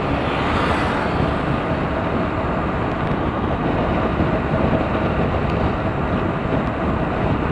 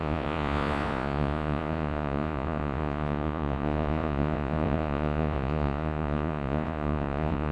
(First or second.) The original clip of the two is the first